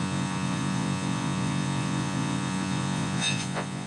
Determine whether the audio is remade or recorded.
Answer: remade